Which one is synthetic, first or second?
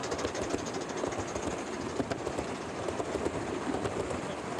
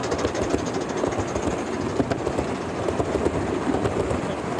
first